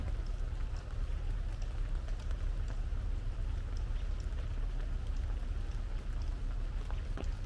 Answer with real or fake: real